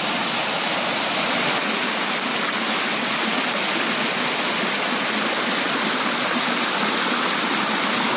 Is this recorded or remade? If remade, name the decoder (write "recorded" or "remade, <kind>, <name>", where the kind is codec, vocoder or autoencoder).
recorded